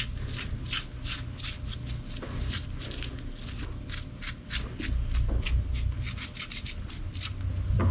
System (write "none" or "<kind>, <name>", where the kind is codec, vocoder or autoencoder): none